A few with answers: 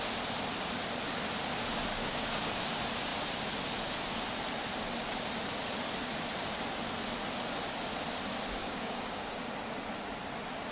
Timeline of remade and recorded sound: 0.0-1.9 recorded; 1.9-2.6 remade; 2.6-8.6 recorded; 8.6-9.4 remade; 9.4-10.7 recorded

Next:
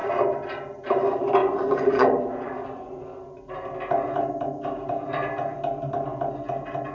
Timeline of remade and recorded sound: 0.0-1.4 recorded; 1.4-3.0 remade; 3.0-6.9 recorded

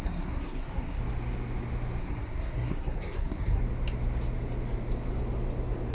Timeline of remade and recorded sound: 0.0-1.0 remade; 1.0-2.0 recorded; 2.0-3.6 remade; 3.6-5.9 recorded

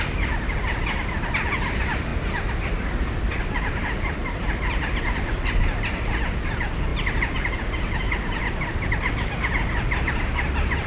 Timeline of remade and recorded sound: 0.0-10.9 recorded

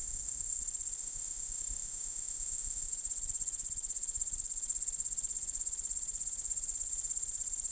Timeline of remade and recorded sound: 0.0-0.6 remade; 0.6-1.0 recorded; 1.0-2.9 remade; 2.9-7.7 recorded

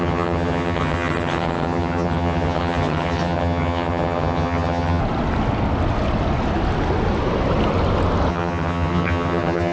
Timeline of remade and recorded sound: 0.0-5.0 remade; 5.0-8.3 recorded; 8.3-9.7 remade

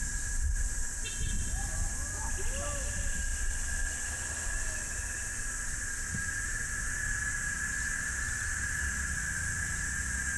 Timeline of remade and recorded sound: 0.0-3.3 recorded; 3.3-3.8 remade; 3.8-5.0 recorded; 5.0-9.6 remade; 9.6-10.4 recorded